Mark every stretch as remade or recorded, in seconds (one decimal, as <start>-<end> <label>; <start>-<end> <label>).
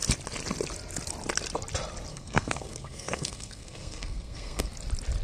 0.0-2.1 recorded; 2.1-4.7 remade; 4.7-5.2 recorded